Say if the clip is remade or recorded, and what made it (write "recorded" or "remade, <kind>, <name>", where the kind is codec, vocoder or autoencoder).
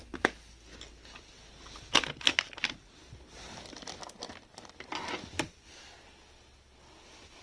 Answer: recorded